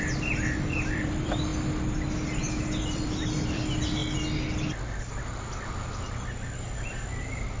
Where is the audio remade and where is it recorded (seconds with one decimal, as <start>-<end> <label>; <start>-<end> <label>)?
0.0-1.5 remade; 1.5-2.8 recorded; 2.8-4.0 remade; 4.0-5.7 recorded; 5.7-7.6 remade